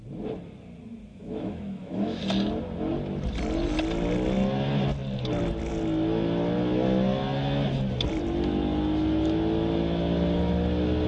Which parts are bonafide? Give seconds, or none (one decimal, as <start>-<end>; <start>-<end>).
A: 0.0-1.1; 2.2-11.1